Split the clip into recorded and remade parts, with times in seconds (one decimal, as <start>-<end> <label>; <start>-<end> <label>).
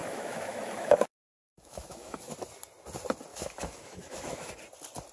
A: 0.0-2.2 remade; 2.2-3.3 recorded; 3.3-4.5 remade; 4.5-5.1 recorded